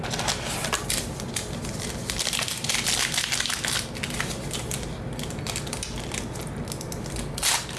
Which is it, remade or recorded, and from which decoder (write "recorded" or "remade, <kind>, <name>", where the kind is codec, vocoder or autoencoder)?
recorded